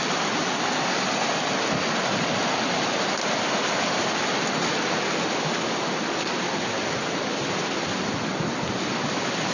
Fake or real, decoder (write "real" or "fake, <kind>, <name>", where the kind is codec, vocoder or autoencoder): real